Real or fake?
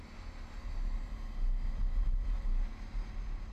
real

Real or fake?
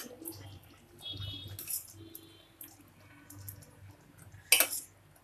real